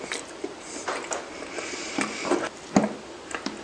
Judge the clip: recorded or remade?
recorded